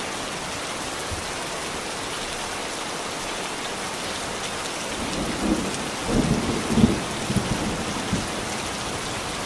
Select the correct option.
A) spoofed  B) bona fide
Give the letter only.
B